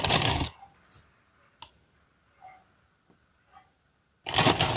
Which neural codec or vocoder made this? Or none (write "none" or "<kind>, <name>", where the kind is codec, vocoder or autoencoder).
none